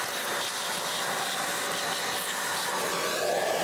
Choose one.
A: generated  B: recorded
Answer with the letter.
B